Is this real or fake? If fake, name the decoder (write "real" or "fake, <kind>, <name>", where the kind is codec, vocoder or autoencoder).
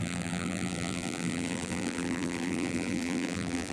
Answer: fake, vocoder, BigVGAN v2